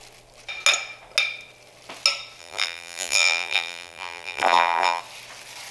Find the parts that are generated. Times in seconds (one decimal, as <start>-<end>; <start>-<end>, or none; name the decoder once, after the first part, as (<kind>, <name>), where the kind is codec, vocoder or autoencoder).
2.4-5.0 (vocoder, BigVGAN v2)

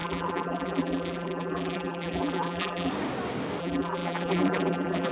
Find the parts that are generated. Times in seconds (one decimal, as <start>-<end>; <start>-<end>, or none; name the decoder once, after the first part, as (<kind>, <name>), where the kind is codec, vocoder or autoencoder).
0.0-2.9 (vocoder, BigVGAN v2); 3.6-5.1

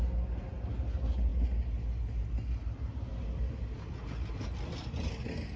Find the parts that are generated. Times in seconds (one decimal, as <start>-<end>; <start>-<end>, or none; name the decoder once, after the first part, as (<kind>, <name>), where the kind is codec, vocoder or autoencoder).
none

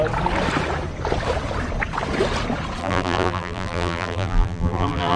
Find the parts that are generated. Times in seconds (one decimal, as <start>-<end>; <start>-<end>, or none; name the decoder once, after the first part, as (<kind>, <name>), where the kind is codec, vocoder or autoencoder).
2.8-5.2 (vocoder, BigVGAN v2)